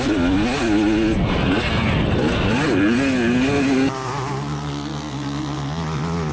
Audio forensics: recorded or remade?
recorded